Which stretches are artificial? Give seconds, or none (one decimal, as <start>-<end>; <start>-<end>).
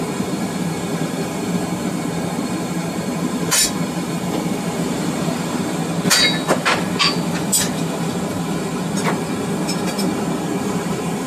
0.0-5.8; 10.6-11.3